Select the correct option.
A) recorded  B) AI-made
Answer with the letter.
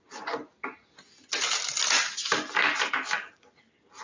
A